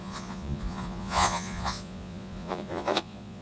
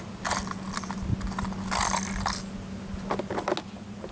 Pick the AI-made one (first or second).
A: first